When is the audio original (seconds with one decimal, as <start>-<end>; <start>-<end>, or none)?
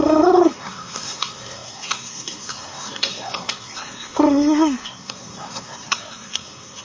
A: none